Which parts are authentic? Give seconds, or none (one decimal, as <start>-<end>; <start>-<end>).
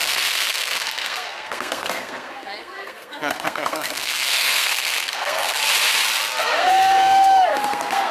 5.6-6.4